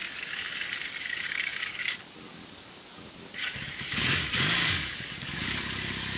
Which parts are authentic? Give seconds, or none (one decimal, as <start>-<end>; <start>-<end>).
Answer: 0.0-1.0